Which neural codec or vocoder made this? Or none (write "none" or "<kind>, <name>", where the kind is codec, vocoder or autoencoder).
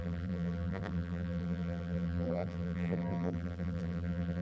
vocoder, BigVGAN v2